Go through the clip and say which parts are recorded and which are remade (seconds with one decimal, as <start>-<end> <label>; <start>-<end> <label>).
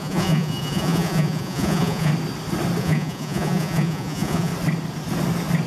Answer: 0.0-2.1 remade; 2.1-2.8 recorded; 2.8-4.5 remade; 4.5-5.7 recorded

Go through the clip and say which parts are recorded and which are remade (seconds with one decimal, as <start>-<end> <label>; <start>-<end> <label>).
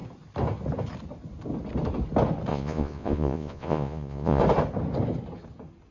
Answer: 0.0-2.5 recorded; 2.5-4.4 remade; 4.4-5.9 recorded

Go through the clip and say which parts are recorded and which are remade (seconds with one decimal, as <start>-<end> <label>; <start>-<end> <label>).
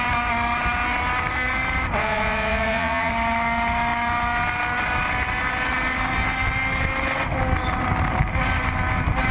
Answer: 0.0-2.0 recorded; 2.0-3.1 remade; 3.1-9.3 recorded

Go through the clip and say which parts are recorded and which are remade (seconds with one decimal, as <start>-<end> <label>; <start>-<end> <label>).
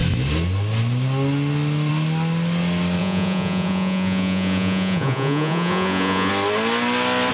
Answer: 0.0-3.0 recorded; 3.0-6.3 remade; 6.3-7.3 recorded